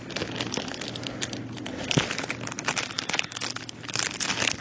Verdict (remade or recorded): recorded